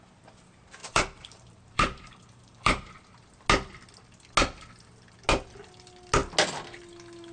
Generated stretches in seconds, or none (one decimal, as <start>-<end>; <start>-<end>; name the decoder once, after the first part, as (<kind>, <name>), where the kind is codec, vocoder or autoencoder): 0.8-2.9 (vocoder, BigVGAN v2)

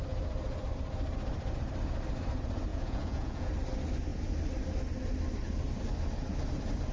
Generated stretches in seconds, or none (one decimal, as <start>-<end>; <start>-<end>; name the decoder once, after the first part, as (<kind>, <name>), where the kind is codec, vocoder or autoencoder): 2.7-3.5 (vocoder, Vocos)